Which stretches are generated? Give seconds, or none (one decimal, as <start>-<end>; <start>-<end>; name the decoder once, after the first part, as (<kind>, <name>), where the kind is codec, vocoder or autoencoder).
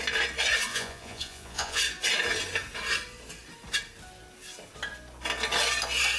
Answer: 0.7-1.8 (vocoder, Vocos)